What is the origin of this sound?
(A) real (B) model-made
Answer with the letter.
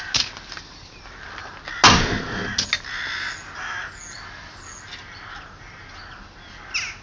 A